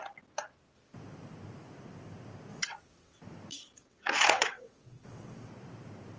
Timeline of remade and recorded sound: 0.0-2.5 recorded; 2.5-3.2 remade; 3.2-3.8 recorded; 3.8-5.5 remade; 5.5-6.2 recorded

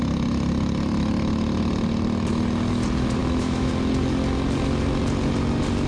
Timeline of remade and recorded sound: 0.0-3.2 recorded; 3.2-3.7 remade; 3.7-5.9 recorded